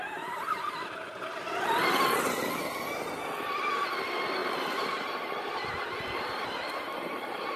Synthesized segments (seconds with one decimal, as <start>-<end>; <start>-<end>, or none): 0.0-1.4; 4.4-7.6